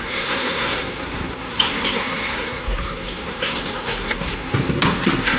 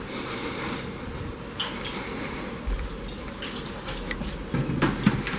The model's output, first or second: first